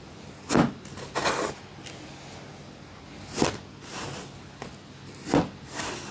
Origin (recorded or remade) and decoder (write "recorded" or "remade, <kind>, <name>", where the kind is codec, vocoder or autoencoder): recorded